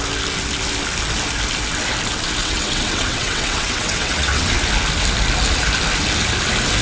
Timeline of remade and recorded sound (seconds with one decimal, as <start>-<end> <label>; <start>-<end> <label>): 0.0-2.4 recorded; 2.4-4.5 remade; 4.5-6.8 recorded